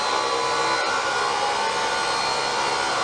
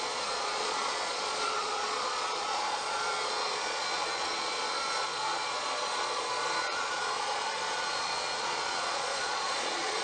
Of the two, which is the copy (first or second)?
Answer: second